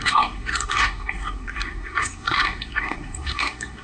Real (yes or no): no